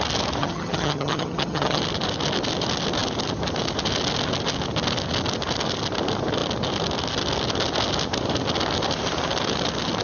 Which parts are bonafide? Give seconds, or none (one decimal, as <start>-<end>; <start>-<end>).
0.0-0.4; 1.8-10.0